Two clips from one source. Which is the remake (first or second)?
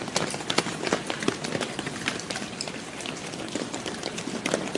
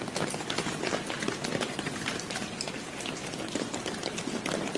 first